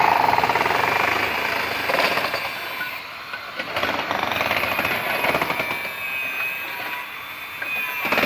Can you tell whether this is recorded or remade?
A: recorded